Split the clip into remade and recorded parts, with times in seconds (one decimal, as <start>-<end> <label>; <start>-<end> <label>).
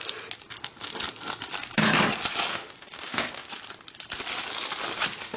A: 0.0-2.5 recorded; 2.5-3.5 remade; 3.5-5.4 recorded